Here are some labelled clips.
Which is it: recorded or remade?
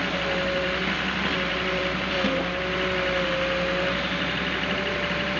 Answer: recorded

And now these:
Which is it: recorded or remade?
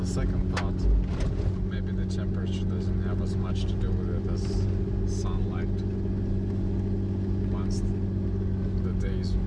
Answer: recorded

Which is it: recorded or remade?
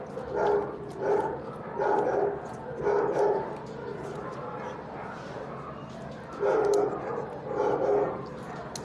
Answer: recorded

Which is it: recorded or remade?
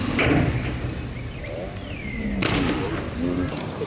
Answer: recorded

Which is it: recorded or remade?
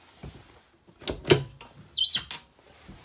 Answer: recorded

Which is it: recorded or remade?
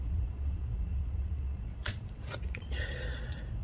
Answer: remade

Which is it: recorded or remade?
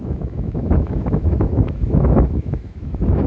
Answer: remade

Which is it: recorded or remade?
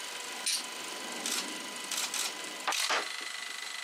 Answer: recorded